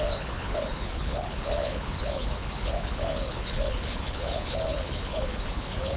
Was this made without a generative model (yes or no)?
no